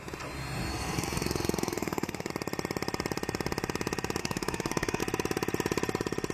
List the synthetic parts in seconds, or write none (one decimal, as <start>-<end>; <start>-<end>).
0.7-2.3; 4.2-5.0

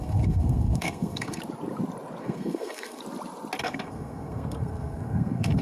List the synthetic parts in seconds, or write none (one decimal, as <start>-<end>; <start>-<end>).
0.0-1.4; 2.2-3.0; 3.6-5.6

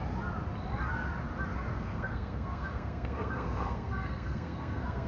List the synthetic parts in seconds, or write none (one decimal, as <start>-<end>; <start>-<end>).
1.7-5.1

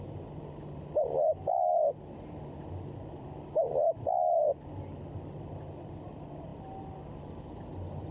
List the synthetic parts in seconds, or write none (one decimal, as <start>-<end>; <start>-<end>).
none